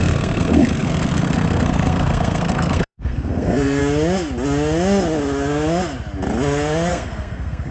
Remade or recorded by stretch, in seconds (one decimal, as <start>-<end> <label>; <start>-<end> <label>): 0.0-3.8 remade; 3.8-6.9 recorded; 6.9-7.7 remade